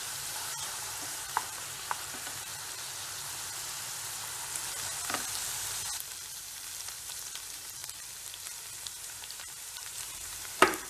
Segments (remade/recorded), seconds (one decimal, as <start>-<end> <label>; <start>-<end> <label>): 0.0-2.5 remade; 2.5-6.9 recorded; 6.9-7.8 remade; 7.8-9.0 recorded; 9.0-10.9 remade